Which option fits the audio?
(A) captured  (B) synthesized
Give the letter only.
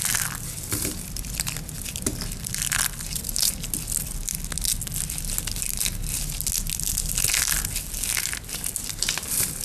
A